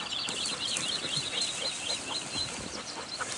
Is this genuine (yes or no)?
yes